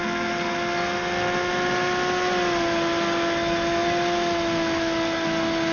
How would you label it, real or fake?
real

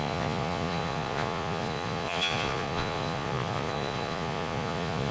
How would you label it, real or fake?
fake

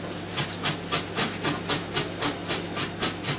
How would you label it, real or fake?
real